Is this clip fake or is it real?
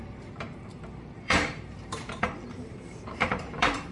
fake